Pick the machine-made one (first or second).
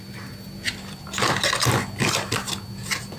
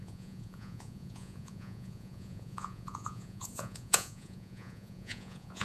second